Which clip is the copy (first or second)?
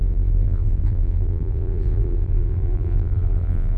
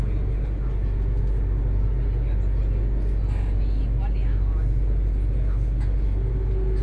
first